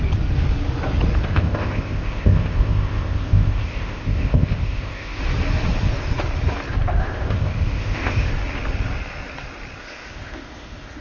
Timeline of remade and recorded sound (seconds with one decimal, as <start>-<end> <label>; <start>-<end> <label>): 0.0-1.3 recorded; 1.3-5.2 remade; 5.2-7.0 recorded; 7.0-8.3 remade; 8.3-9.8 recorded; 9.8-11.0 remade